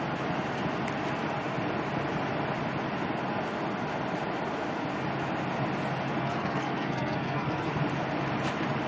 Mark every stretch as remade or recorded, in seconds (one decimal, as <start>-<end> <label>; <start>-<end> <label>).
0.0-6.2 recorded; 6.2-7.7 remade; 7.7-8.9 recorded